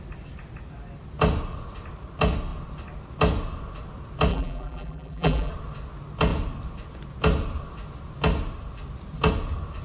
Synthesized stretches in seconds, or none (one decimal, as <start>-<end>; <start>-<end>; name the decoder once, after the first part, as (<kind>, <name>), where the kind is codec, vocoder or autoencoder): 4.3-5.5 (vocoder, BigVGAN v2)